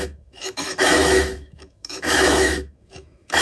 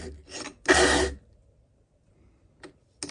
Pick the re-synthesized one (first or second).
first